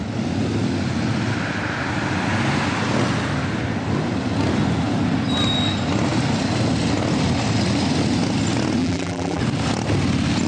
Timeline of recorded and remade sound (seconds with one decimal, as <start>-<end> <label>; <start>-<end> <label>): 0.0-8.8 recorded; 8.8-9.4 remade; 9.4-10.5 recorded